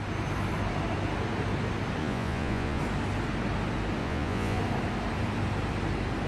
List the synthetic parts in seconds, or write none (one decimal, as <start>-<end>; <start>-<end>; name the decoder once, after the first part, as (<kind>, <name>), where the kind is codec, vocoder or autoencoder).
2.0-2.8 (vocoder, Vocos); 4.0-4.6